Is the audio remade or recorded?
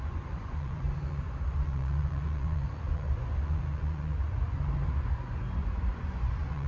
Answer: remade